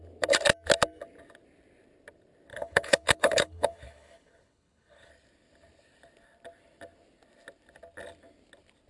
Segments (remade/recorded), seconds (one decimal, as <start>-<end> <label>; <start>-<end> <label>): 0.0-2.5 recorded; 2.5-5.1 remade; 5.1-8.9 recorded